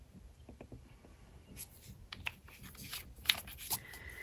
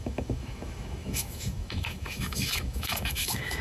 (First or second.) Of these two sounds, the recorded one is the first